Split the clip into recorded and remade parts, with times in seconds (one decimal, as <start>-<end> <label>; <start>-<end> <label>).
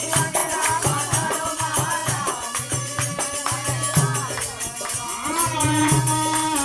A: 0.0-0.4 recorded; 0.4-1.6 remade; 1.6-2.0 recorded; 2.0-2.7 remade; 2.7-5.1 recorded; 5.1-5.9 remade; 5.9-6.6 recorded